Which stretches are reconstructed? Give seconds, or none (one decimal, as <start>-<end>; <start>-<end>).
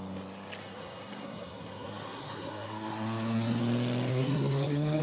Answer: 0.6-3.6; 4.1-5.0